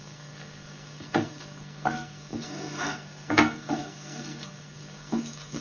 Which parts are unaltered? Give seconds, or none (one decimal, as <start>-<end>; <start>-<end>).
none